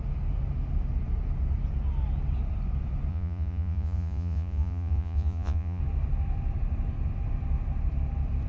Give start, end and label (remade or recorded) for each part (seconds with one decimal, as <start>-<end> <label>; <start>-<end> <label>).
0.0-3.1 recorded; 3.1-5.8 remade; 5.8-8.5 recorded